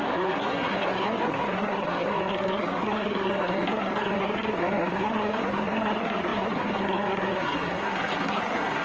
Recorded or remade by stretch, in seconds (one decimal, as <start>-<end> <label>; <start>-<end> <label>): 0.0-8.8 remade